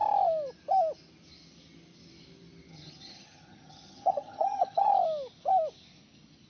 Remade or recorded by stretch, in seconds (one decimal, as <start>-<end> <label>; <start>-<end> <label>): 0.0-2.7 recorded; 2.7-4.9 remade; 4.9-6.5 recorded